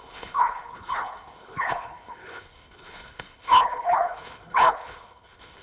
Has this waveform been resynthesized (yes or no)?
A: yes